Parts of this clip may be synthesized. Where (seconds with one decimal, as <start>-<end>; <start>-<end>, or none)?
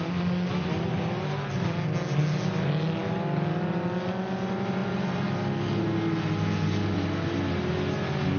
none